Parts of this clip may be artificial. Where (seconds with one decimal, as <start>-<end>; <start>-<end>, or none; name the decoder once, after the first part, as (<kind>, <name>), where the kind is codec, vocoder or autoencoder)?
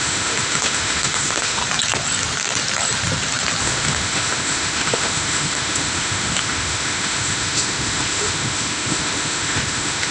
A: 0.0-1.6 (autoencoder, DAC-VAE); 3.6-10.1